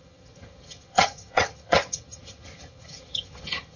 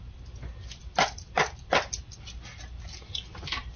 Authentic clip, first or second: second